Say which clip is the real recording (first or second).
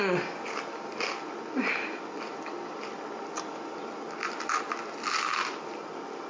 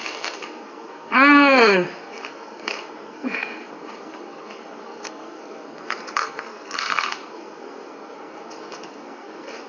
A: first